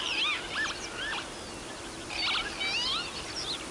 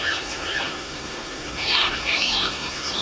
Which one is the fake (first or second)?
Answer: second